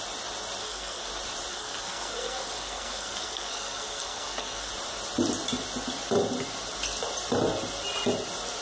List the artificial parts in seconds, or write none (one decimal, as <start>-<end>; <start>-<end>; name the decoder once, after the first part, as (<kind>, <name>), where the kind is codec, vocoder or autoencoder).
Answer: 0.6-1.1 (codec, SNAC); 1.5-4.7